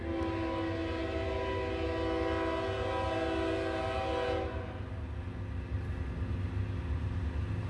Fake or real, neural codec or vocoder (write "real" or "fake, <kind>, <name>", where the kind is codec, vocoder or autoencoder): real